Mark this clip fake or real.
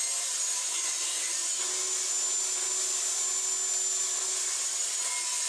real